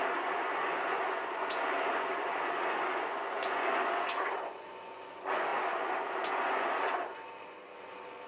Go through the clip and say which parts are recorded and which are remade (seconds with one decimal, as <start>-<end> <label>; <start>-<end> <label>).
0.0-8.3 remade